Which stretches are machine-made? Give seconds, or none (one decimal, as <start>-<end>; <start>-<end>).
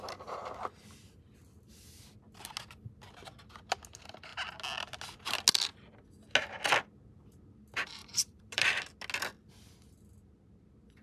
8.0-8.8